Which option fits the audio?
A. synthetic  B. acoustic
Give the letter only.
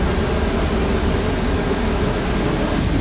B